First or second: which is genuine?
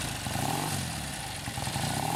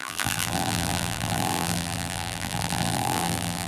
first